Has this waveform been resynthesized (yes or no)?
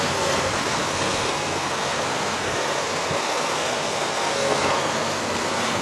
yes